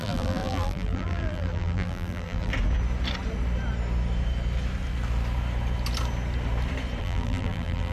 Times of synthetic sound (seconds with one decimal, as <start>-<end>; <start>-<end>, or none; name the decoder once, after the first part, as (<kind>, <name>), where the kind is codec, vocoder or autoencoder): 0.0-2.5 (vocoder, BigVGAN v2); 7.0-7.9